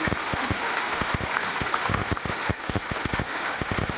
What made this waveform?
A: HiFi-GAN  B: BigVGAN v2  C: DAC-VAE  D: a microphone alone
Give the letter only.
C